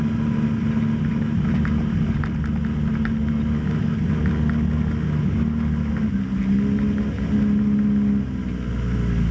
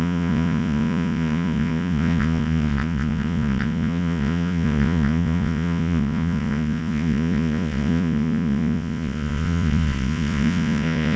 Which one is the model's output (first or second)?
second